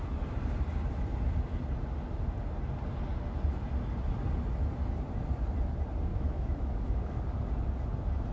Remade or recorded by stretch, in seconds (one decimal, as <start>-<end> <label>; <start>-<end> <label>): 0.0-6.1 recorded; 6.1-7.2 remade; 7.2-8.3 recorded